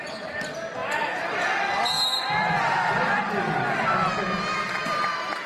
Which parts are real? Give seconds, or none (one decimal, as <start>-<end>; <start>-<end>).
0.0-0.8; 4.1-5.5